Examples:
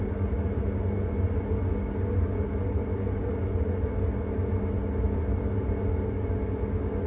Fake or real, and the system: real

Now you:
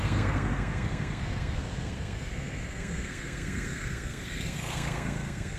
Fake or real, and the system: fake, codec, SNAC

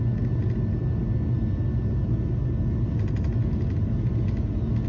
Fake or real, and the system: real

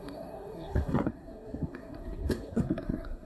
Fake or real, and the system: fake, codec, SNAC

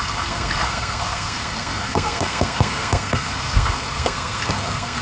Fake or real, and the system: fake, codec, SNAC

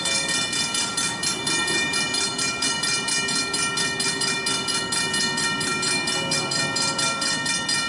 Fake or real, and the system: real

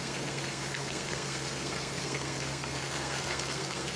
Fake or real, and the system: fake, codec, SNAC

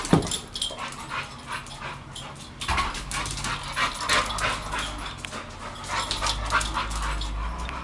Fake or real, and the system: real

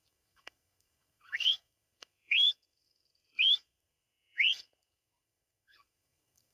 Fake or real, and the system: fake, codec, SNAC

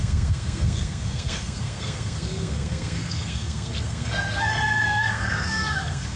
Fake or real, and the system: fake, codec, SNAC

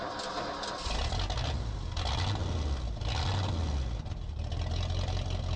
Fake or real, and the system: real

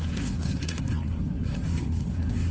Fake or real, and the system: fake, codec, SNAC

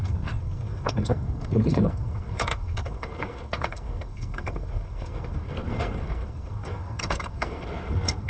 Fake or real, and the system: fake, codec, SNAC